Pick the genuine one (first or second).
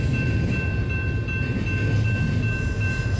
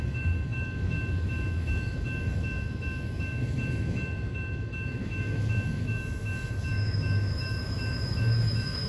first